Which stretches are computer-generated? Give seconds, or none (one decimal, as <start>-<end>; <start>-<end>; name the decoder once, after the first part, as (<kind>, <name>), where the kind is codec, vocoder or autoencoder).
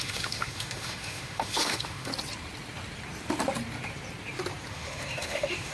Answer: 0.0-2.1 (autoencoder, DAC-VAE); 4.7-5.7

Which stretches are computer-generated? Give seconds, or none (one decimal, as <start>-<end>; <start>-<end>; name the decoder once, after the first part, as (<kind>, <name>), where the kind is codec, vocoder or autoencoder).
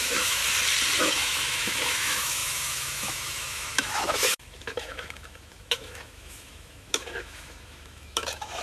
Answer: 0.0-0.4 (autoencoder, DAC-VAE); 1.0-8.6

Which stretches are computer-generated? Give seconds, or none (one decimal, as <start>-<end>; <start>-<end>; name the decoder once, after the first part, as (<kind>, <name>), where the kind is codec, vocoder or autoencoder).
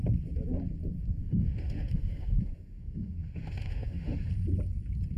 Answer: 1.2-4.3 (autoencoder, DAC-VAE)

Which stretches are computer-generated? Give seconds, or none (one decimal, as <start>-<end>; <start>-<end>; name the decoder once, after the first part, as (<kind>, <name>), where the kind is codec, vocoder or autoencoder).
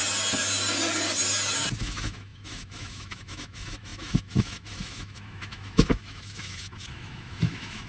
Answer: 1.8-7.9 (autoencoder, DAC-VAE)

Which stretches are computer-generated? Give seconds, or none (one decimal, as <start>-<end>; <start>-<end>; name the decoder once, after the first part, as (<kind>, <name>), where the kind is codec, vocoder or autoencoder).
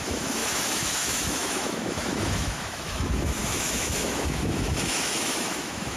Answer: 0.0-6.0 (autoencoder, DAC-VAE)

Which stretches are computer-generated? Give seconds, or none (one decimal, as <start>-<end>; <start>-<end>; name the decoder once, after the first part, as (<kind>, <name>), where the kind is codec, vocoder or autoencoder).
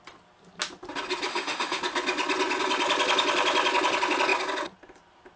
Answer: 1.3-1.8 (autoencoder, DAC-VAE)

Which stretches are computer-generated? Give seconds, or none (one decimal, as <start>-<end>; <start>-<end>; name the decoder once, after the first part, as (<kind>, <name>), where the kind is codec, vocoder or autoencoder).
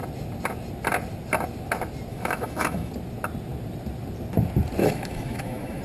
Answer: 2.1-2.9 (autoencoder, DAC-VAE); 4.8-5.8